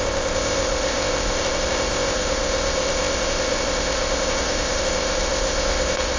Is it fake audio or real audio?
fake